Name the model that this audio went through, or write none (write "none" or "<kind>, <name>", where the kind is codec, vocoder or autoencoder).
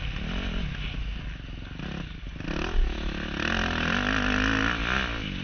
none